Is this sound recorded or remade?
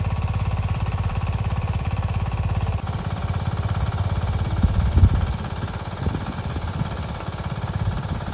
remade